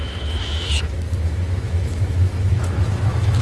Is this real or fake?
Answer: fake